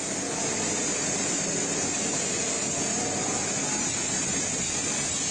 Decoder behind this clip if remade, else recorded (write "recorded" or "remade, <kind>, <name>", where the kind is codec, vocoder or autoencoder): recorded